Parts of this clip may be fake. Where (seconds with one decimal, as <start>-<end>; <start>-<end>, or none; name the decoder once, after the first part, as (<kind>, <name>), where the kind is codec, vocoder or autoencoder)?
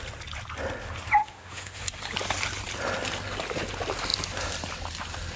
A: 1.2-1.8 (autoencoder, DAC-VAE)